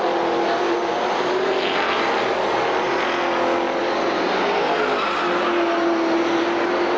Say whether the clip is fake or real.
real